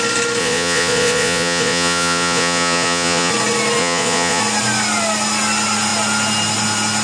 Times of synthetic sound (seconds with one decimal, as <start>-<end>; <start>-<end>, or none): 0.4-3.3; 3.8-4.4